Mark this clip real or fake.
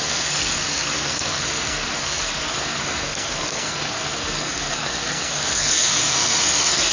fake